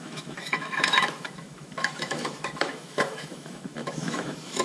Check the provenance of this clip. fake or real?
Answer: fake